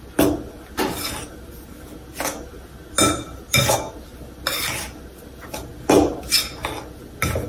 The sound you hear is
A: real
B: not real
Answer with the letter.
A